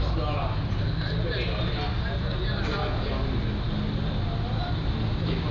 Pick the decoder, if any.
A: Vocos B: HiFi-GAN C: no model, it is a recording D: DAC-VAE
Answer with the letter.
C